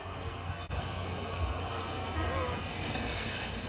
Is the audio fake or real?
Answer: fake